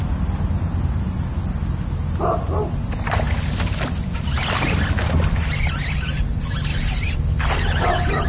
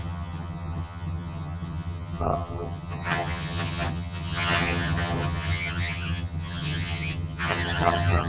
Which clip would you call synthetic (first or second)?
second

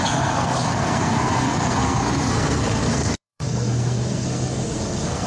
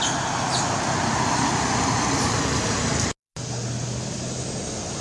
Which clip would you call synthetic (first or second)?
first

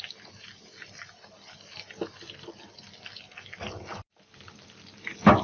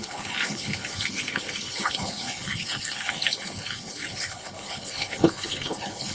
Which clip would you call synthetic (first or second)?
second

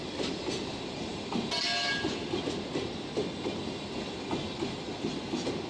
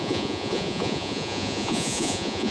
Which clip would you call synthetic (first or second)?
second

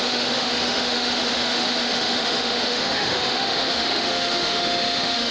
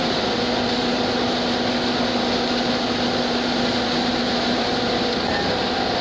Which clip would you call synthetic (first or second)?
first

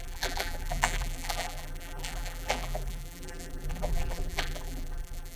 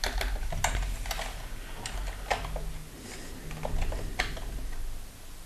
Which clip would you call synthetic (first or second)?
first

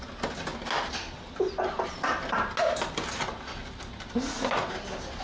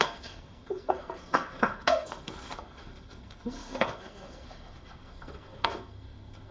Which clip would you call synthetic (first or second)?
second